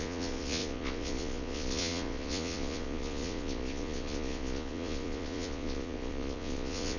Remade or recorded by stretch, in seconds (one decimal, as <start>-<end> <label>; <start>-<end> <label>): 0.0-7.0 remade